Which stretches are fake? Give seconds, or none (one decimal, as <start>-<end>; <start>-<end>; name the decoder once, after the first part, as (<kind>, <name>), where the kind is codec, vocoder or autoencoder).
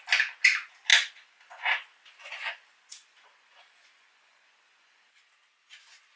0.9-1.6 (vocoder, Vocos); 2.2-5.3